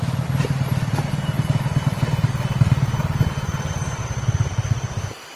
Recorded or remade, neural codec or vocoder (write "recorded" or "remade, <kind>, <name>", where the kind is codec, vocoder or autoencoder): recorded